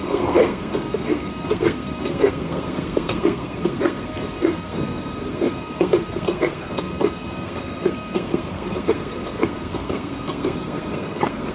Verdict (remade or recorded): remade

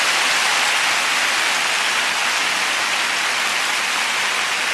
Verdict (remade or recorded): recorded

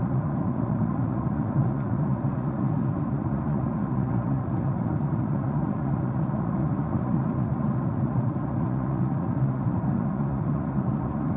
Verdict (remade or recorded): remade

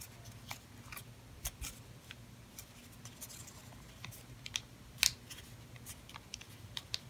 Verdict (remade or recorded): recorded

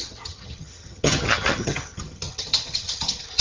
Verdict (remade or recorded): remade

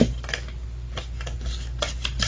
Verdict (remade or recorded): recorded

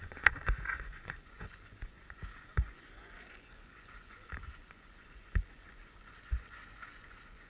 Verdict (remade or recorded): remade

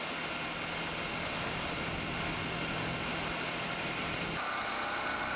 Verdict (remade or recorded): recorded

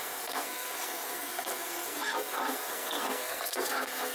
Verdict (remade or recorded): remade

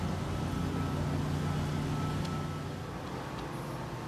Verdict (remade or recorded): recorded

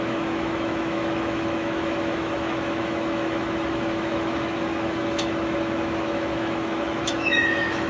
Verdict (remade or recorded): remade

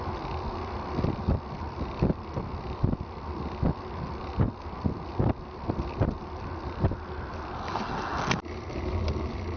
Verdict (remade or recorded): recorded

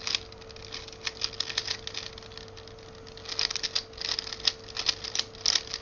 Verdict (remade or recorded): recorded